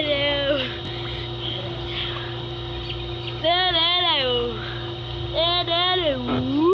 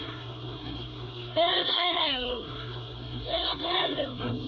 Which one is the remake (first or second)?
second